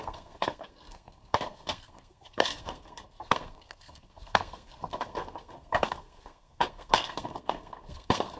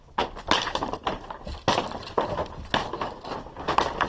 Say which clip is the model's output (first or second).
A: first